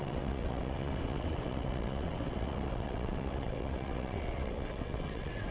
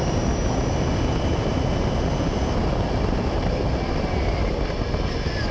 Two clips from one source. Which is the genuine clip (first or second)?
second